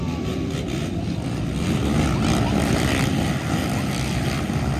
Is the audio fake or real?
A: real